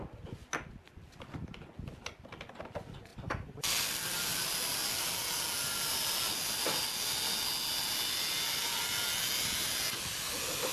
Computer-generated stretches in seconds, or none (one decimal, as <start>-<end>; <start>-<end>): 3.1-3.7